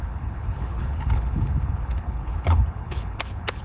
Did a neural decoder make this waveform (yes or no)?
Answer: yes